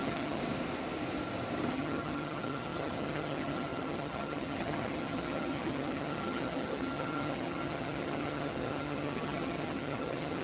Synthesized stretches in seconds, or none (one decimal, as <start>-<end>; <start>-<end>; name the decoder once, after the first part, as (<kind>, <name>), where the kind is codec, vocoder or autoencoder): 0.0-0.4 (vocoder, HiFi-GAN); 1.7-10.4